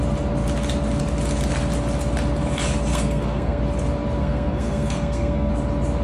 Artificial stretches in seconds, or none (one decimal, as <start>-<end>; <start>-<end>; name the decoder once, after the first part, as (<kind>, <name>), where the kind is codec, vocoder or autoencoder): 2.9-3.6 (codec, SNAC); 4.2-5.5